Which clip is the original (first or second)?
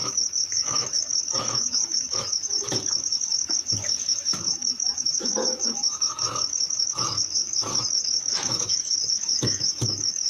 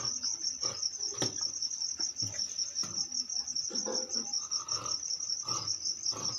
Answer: second